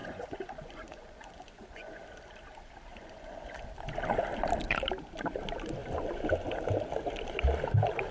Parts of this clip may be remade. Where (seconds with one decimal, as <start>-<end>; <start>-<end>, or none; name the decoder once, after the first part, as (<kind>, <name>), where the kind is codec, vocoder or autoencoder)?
0.0-2.0 (vocoder, Vocos); 2.9-3.6